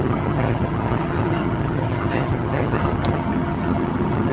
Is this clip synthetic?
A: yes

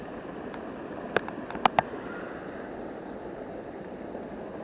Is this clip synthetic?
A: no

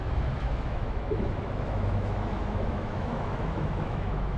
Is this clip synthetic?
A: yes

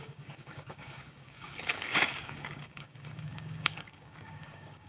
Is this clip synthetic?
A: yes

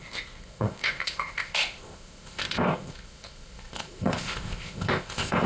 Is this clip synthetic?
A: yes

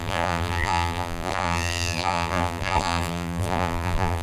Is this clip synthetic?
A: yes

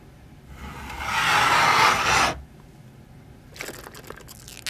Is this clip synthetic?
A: no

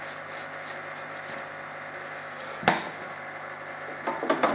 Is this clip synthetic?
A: no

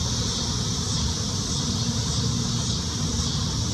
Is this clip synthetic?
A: no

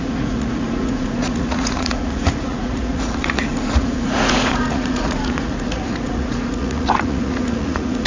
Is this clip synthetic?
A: yes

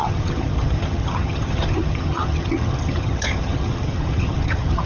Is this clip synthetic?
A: yes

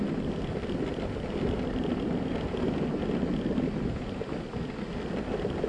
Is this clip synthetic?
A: no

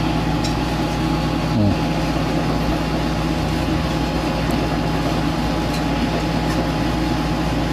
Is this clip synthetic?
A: no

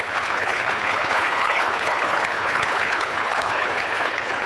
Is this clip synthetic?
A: yes